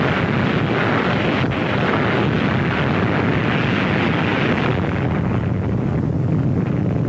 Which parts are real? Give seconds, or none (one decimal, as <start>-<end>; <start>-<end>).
0.0-7.1